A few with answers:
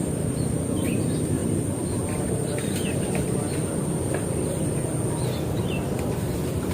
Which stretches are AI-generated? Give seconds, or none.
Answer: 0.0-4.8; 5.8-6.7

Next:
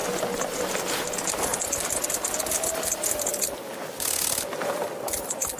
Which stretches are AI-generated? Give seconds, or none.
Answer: 0.0-0.8

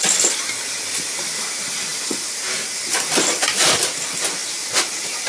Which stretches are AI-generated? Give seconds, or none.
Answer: 1.9-3.9

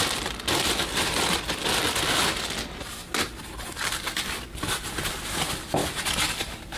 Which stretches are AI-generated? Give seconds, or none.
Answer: 0.0-3.0; 3.7-5.8

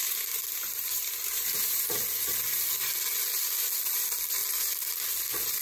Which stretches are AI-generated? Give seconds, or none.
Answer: 0.0-1.9

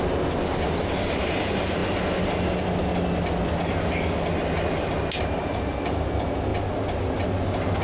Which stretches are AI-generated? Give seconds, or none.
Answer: 0.0-1.8; 2.5-2.9; 5.2-6.5

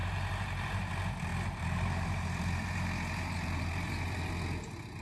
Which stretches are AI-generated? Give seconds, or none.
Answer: 0.0-0.9; 1.3-4.3

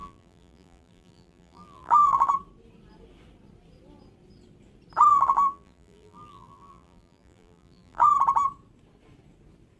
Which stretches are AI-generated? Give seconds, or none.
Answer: 0.0-2.3; 5.1-8.1